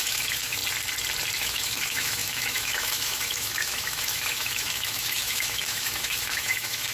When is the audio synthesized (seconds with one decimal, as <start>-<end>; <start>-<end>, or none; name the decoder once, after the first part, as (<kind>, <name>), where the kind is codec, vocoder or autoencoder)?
0.0-0.6 (autoencoder, DAC-VAE); 1.4-6.9